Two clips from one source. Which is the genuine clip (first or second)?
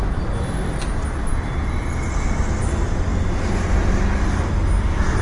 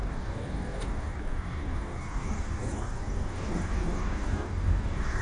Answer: first